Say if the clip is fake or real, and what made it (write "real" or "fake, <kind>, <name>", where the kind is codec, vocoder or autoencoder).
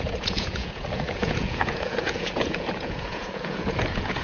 fake, vocoder, Vocos